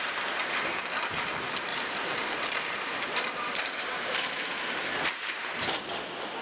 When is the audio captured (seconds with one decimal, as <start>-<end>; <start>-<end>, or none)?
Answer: 0.0-1.7; 5.5-6.4